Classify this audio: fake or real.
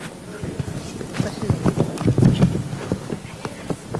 real